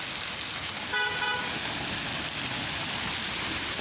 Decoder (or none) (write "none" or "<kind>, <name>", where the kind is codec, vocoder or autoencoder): none